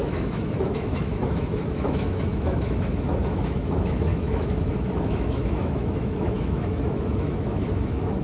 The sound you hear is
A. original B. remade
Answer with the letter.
B